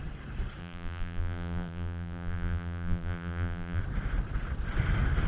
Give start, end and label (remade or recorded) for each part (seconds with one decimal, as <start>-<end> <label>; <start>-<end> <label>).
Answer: 0.0-0.6 recorded; 0.6-3.8 remade; 3.8-5.3 recorded